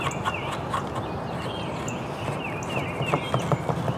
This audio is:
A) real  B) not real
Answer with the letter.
A